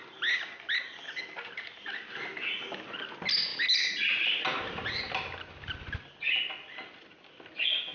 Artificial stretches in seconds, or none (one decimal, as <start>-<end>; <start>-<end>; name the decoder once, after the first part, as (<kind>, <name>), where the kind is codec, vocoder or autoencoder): none